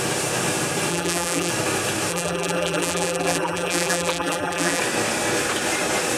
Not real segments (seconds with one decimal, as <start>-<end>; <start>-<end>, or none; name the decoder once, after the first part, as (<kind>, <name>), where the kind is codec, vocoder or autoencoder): 0.9-1.5 (vocoder, BigVGAN v2); 2.1-4.8